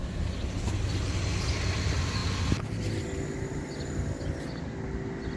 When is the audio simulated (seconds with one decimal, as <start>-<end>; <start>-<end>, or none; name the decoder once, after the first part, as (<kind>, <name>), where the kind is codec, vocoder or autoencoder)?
none